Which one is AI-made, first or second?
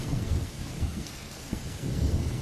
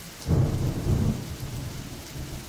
first